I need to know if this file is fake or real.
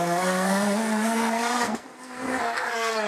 fake